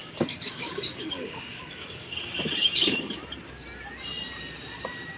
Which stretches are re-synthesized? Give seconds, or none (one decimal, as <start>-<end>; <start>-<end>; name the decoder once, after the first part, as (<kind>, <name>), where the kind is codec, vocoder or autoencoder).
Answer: 0.0-3.1 (codec, DAC)